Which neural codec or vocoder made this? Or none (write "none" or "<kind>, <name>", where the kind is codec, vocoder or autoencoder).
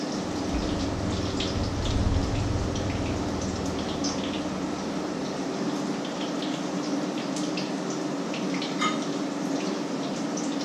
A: none